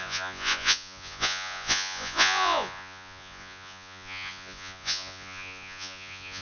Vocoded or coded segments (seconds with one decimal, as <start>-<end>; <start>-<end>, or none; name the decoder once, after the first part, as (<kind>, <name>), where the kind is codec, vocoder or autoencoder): 0.0-6.4 (vocoder, Vocos)